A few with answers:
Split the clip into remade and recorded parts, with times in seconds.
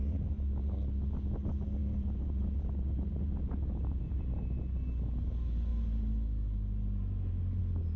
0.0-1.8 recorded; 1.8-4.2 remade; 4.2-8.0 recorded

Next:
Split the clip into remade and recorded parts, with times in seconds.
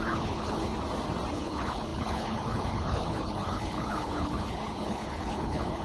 0.0-0.7 remade; 0.7-1.3 recorded; 1.3-5.8 remade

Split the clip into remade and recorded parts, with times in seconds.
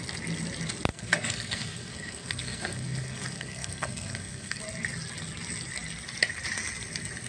0.0-0.9 recorded; 0.9-4.6 remade; 4.6-7.3 recorded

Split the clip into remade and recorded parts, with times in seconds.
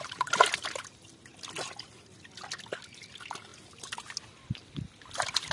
0.0-5.5 recorded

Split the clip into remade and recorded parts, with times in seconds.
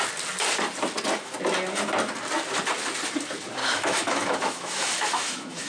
0.0-3.6 recorded; 3.6-5.7 remade